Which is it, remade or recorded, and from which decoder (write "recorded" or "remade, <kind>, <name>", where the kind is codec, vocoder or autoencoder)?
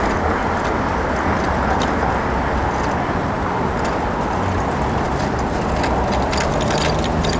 recorded